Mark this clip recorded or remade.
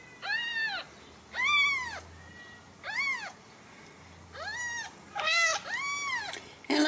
recorded